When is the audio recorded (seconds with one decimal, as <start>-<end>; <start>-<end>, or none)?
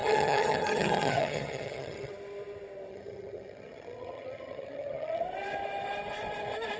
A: 2.1-2.9; 5.2-6.8